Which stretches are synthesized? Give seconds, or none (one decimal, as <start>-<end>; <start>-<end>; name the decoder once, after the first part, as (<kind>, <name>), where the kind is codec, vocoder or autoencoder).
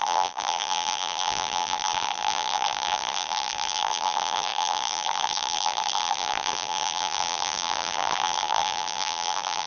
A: 0.0-9.7 (vocoder, BigVGAN v2)